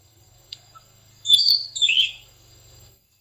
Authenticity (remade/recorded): remade